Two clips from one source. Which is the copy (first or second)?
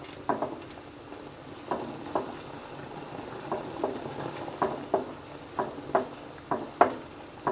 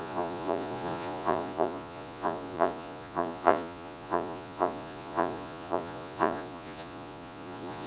second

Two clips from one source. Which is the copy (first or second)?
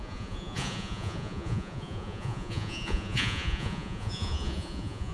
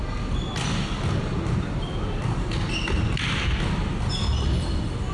first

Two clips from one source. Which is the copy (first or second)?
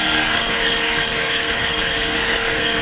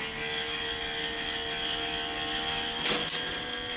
first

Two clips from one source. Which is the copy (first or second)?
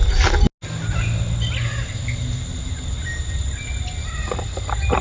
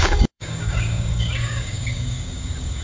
second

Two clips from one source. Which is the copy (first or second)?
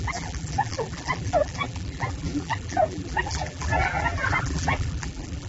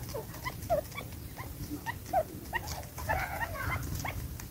first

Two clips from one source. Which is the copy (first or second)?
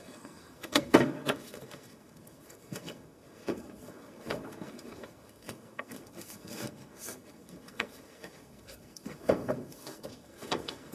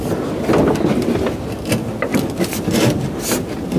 first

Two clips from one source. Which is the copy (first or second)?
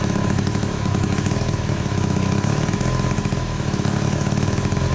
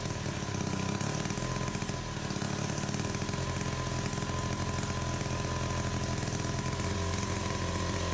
first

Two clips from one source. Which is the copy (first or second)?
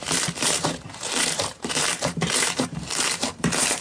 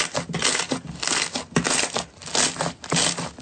first